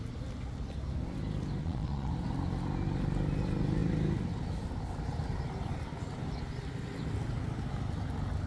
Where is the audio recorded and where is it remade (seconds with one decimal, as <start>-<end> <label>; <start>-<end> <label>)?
0.0-1.6 recorded; 1.6-2.1 remade; 2.1-8.5 recorded